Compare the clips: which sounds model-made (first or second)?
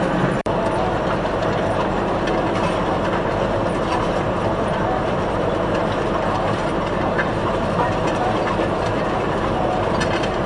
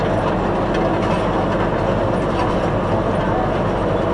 first